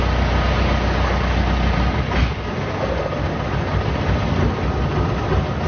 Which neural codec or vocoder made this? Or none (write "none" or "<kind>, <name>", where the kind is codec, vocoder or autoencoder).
none